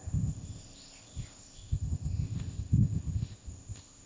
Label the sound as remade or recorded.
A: remade